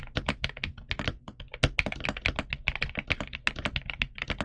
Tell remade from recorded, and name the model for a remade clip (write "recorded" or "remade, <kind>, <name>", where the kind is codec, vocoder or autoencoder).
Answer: recorded